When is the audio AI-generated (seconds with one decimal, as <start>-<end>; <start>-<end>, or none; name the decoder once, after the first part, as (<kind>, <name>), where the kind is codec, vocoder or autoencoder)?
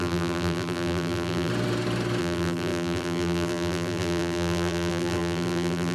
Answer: 0.0-1.5 (vocoder, BigVGAN v2); 2.2-5.9